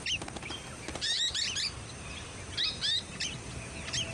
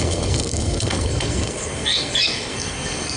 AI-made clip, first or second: second